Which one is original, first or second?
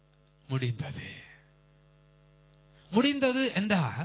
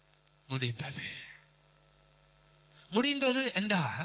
first